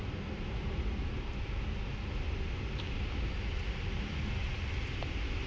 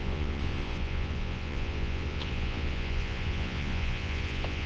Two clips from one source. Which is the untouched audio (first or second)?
first